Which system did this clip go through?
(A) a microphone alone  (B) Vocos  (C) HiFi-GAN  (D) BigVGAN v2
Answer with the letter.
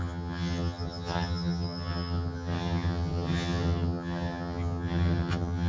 C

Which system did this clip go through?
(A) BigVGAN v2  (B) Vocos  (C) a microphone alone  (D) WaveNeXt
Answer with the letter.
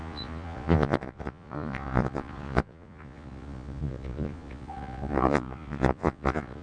B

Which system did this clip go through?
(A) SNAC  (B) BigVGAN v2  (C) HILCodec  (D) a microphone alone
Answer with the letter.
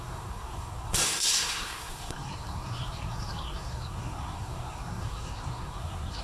A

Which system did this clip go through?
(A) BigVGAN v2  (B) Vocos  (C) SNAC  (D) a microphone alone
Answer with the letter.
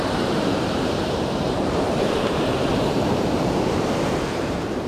A